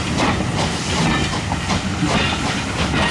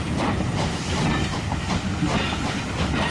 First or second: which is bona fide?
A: first